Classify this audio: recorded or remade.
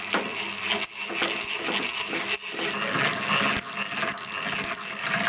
recorded